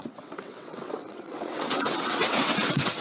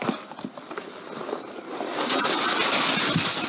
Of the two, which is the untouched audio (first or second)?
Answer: second